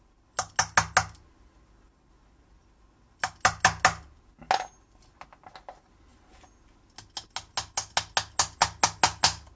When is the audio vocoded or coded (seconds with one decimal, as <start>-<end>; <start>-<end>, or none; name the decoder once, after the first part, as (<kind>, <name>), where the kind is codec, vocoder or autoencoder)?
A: none

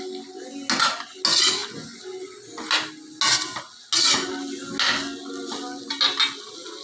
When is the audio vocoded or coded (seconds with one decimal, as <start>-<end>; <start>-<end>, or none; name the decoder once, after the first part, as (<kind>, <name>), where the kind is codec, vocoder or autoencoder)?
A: none

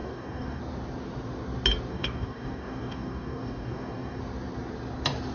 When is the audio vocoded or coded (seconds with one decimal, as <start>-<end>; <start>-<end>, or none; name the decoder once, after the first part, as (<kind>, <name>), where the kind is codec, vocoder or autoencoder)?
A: 0.0-0.6 (codec, DAC); 1.9-4.2

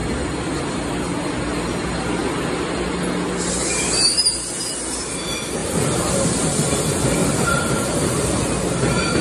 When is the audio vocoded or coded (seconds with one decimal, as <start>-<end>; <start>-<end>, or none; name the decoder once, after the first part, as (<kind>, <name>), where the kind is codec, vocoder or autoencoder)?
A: 5.6-6.7 (vocoder, BigVGAN v2); 7.2-8.6

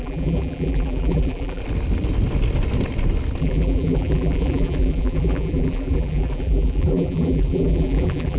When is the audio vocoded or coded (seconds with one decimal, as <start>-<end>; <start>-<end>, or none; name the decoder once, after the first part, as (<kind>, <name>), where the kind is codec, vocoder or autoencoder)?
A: 0.0-1.6 (vocoder, BigVGAN v2); 3.4-8.4

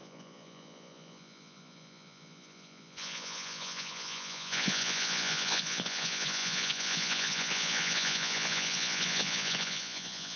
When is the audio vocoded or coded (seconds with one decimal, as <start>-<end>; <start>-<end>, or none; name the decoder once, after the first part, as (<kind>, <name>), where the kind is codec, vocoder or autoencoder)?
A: 0.0-10.4 (vocoder, Vocos)

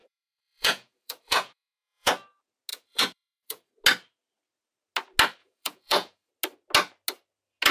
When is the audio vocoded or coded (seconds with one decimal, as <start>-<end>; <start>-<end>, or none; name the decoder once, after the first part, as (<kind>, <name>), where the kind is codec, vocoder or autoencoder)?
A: 0.0-2.1 (vocoder, Vocos); 2.7-3.7; 5.4-6.3

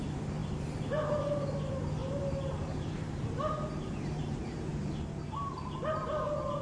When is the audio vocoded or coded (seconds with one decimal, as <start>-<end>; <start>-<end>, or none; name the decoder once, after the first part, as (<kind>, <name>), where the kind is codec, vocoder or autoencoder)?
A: 0.0-4.7 (vocoder, BigVGAN v2); 5.8-6.6